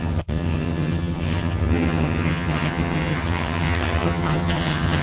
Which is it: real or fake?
fake